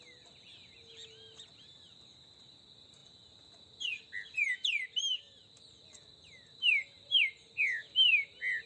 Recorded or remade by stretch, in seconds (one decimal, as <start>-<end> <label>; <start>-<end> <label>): 0.0-8.7 recorded